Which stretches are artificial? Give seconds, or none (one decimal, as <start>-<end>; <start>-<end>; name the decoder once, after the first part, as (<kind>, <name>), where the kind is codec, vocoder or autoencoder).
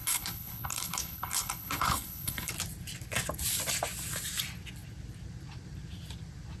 0.0-2.5 (codec, HILCodec)